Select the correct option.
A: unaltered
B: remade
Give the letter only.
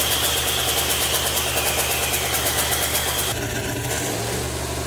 A